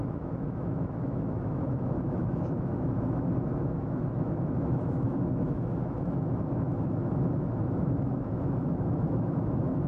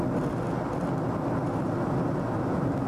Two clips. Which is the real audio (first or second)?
second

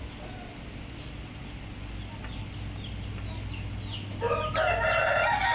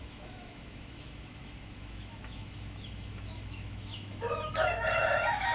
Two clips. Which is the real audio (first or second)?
first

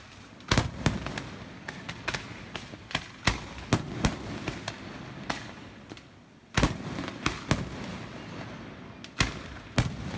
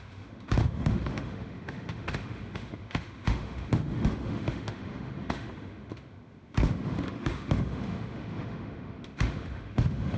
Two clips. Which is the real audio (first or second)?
first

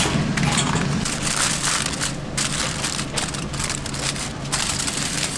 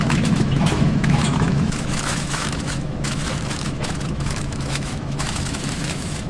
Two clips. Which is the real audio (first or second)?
first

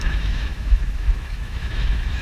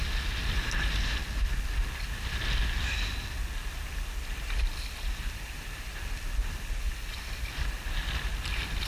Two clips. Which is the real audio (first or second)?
second